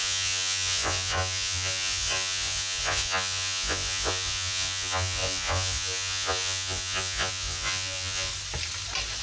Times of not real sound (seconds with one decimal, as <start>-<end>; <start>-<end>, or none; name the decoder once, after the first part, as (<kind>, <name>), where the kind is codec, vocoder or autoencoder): 0.0-8.3 (vocoder, Vocos)